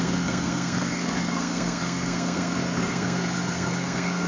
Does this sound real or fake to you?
fake